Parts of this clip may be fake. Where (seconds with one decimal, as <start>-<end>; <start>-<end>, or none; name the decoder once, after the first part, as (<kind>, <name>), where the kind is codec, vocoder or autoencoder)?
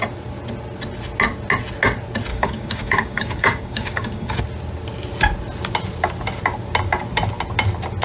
2.3-4.4 (codec, DAC)